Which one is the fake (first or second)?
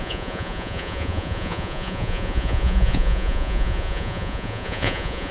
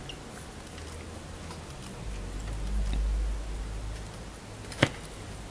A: first